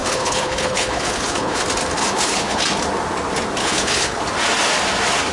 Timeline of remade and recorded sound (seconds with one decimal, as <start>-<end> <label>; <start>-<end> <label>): 0.0-1.6 remade; 1.6-2.0 recorded; 2.0-2.6 remade; 2.6-3.6 recorded; 3.6-4.2 remade; 4.2-5.3 recorded